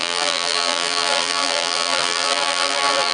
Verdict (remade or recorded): remade